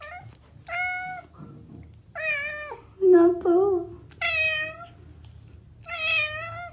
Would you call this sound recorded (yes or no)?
yes